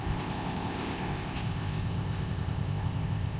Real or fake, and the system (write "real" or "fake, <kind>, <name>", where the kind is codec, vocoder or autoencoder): fake, codec, ZipCodec